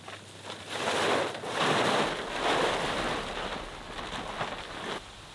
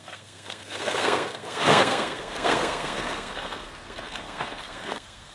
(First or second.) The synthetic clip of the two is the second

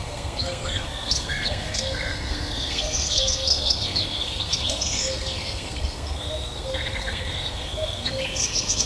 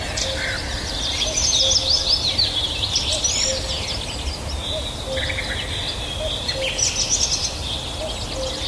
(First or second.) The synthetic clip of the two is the first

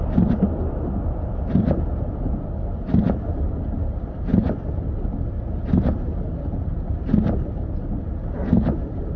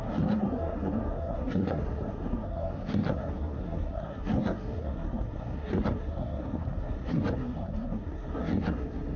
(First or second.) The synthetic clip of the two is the second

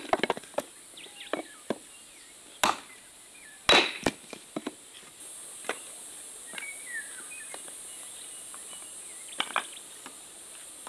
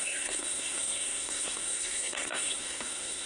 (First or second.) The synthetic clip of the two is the second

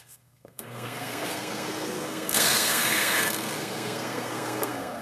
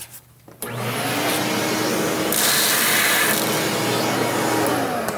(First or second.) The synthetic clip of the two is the first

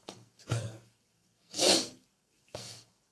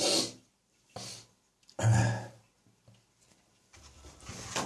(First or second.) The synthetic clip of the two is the first